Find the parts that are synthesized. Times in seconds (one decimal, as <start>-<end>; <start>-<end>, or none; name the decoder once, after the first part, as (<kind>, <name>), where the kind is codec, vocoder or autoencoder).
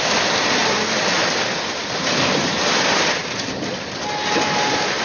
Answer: 0.0-5.0 (vocoder, BigVGAN v2)